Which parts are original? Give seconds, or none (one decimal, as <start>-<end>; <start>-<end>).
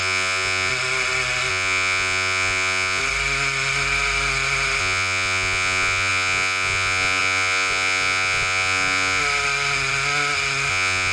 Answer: 0.7-1.5; 3.0-4.8; 9.2-10.7